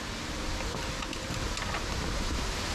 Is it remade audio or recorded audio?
recorded